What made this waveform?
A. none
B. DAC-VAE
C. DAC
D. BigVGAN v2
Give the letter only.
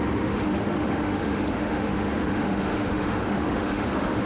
B